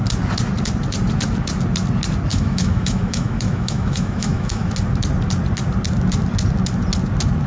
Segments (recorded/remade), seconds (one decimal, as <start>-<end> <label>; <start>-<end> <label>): 0.0-2.3 recorded; 2.3-4.7 remade; 4.7-7.5 recorded